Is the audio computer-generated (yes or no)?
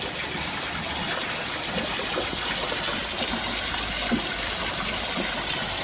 no